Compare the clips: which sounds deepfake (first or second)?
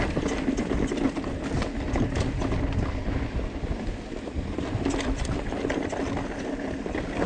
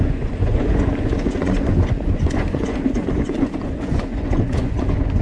second